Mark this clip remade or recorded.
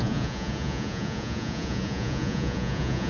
remade